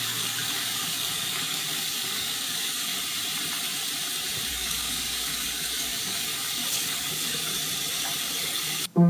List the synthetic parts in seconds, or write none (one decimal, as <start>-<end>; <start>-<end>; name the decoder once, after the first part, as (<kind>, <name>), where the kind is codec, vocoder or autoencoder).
0.0-2.9 (codec, DAC); 4.5-7.5; 8.2-9.1